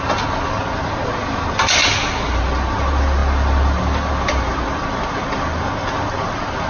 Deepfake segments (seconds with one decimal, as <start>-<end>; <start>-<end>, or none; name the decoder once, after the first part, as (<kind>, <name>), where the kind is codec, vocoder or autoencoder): none

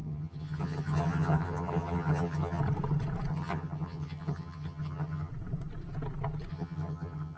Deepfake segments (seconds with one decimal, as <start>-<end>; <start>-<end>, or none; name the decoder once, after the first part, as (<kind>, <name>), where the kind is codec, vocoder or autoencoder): 0.0-2.6 (vocoder, HiFi-GAN); 3.3-5.3; 6.5-7.4